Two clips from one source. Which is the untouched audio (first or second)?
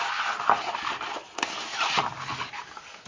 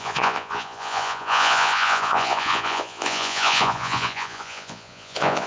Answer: first